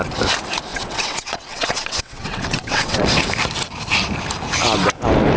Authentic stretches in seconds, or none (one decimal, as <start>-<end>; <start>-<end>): 0.0-0.7; 3.1-5.4